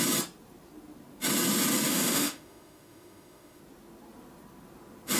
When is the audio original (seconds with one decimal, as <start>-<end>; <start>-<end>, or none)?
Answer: 0.0-1.9; 3.6-5.2